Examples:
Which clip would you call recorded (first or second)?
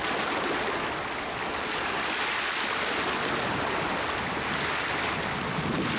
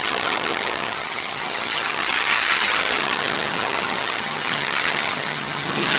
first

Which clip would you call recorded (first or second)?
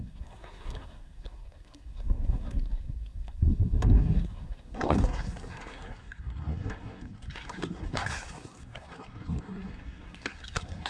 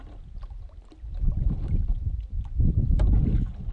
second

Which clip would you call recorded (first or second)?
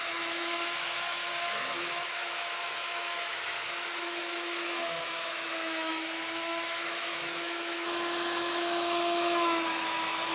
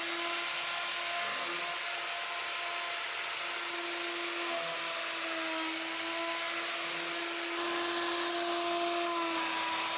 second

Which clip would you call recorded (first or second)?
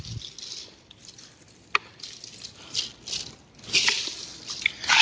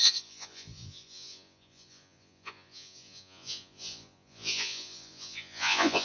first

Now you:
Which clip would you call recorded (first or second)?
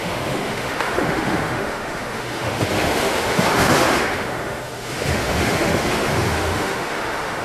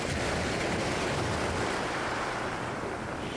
second